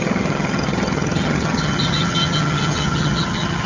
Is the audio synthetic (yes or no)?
yes